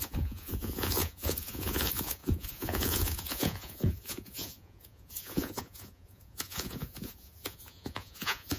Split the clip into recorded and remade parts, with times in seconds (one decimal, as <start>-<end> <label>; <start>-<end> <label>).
0.0-8.6 remade